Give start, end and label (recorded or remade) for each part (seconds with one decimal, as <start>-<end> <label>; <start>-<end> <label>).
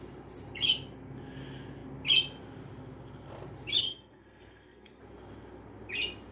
0.0-3.9 recorded; 3.9-5.0 remade; 5.0-6.3 recorded